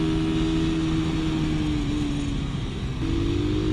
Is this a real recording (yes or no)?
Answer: yes